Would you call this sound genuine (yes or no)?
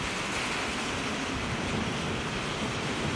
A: yes